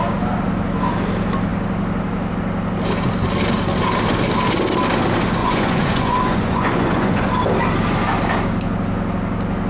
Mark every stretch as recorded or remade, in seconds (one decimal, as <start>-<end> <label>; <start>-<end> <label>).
0.0-5.4 recorded; 5.4-7.3 remade; 7.3-9.7 recorded